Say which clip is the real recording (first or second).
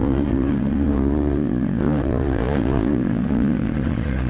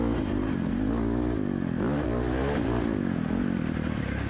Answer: second